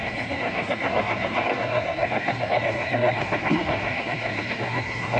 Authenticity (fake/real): fake